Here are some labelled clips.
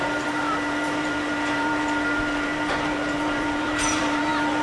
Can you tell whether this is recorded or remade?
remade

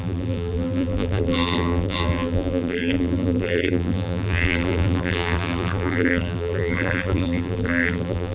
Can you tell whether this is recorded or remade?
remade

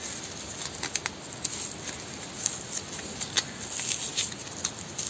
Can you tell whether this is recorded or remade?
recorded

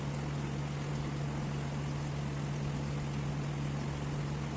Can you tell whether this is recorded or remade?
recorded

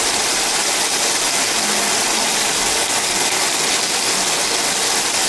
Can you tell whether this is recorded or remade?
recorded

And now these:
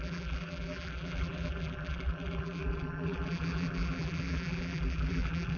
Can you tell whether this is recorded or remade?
remade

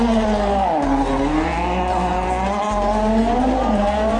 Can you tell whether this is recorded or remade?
recorded